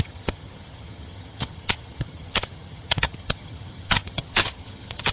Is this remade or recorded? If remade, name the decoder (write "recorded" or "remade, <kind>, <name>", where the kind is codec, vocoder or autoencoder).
remade, vocoder, HiFi-GAN